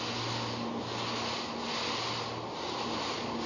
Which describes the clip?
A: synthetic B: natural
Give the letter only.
B